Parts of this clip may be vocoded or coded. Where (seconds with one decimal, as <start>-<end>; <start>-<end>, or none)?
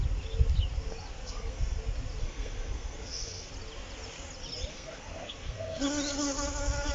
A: 1.2-1.8; 2.2-3.5; 4.7-5.8